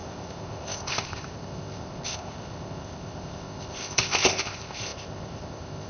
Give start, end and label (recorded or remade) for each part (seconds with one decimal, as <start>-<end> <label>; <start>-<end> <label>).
0.0-5.9 remade